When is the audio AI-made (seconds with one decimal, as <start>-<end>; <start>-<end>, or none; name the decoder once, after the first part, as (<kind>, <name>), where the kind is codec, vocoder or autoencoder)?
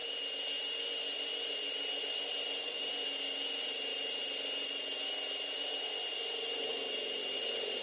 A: none